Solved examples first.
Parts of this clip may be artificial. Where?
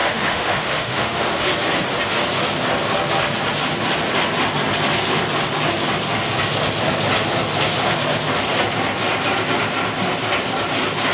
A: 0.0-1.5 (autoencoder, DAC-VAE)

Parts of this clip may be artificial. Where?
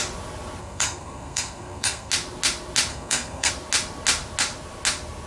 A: 0.6-2.1 (codec, SNAC); 2.9-3.5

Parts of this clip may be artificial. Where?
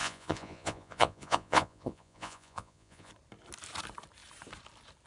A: 0.0-3.1 (vocoder, Vocos)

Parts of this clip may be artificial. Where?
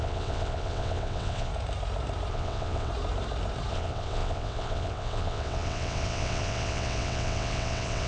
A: 0.0-1.5 (vocoder, WaveNeXt); 2.3-2.9; 3.7-8.1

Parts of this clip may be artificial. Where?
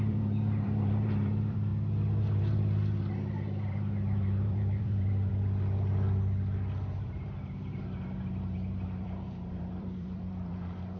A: 0.0-1.7 (vocoder, BigVGAN v2); 2.2-5.3; 7.0-11.0